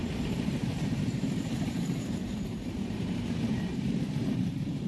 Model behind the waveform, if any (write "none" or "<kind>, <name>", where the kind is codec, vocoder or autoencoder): vocoder, BigVGAN v2